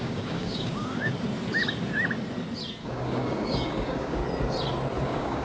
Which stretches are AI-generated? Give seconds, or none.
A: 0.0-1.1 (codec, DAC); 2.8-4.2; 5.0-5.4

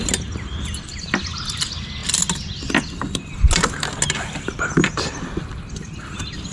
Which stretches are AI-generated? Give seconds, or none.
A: none

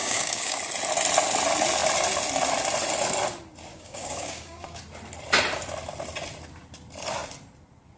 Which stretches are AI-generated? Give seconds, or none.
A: 0.0-0.6 (codec, DAC); 3.7-4.8

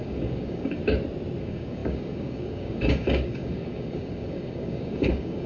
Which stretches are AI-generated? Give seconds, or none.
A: 0.0-0.8 (codec, DAC); 1.4-5.5

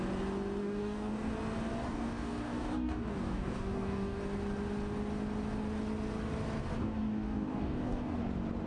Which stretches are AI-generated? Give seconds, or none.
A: 0.6-1.3 (codec, DAC); 1.8-4.2; 6.8-8.2